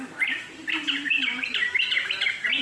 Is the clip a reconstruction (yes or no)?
no